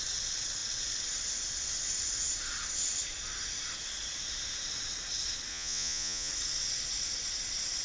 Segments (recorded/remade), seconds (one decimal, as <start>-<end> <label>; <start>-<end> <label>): 0.0-5.5 recorded; 5.5-6.3 remade; 6.3-7.8 recorded